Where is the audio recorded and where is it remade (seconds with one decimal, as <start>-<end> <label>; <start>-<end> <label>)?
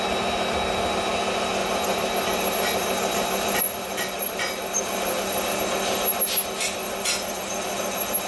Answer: 0.0-1.6 recorded; 1.6-5.6 remade; 5.6-6.8 recorded; 6.8-7.4 remade; 7.4-8.3 recorded